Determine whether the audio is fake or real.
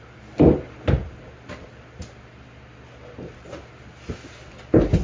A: real